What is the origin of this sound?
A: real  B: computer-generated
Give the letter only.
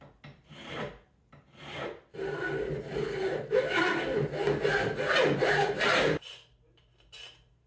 A